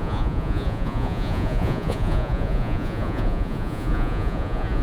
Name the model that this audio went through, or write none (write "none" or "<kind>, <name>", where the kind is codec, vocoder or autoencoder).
vocoder, Vocos